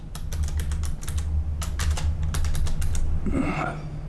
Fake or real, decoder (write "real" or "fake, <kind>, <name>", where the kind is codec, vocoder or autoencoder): real